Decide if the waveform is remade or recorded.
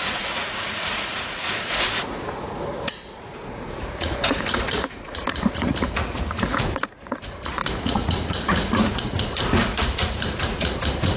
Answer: remade